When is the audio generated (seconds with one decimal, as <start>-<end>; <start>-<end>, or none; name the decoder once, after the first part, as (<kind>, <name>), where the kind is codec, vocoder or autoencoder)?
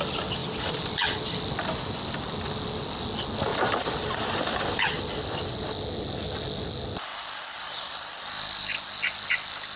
0.4-1.5 (vocoder, BigVGAN v2); 7.1-8.6